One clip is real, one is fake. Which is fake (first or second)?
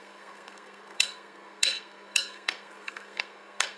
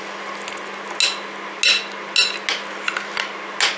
first